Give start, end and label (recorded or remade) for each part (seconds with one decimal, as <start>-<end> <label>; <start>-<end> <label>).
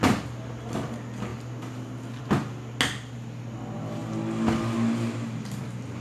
0.0-4.0 recorded; 4.0-5.6 remade; 5.6-6.0 recorded